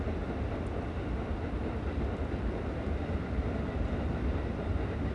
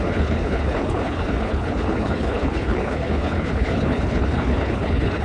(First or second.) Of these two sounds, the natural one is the first